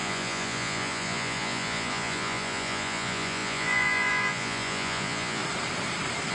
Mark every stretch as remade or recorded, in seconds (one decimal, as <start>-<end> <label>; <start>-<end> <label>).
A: 0.0-5.4 remade; 5.4-6.3 recorded